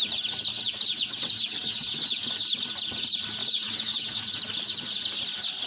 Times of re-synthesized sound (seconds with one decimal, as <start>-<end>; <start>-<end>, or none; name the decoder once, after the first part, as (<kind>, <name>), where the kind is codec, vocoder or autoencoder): 0.5-2.3 (vocoder, WaveNeXt); 3.4-4.3